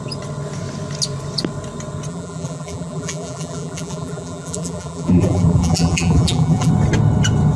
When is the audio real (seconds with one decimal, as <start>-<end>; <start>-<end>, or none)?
0.0-2.1; 6.7-7.6